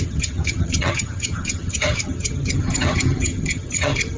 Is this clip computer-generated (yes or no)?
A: yes